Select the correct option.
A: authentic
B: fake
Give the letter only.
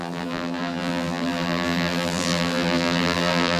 B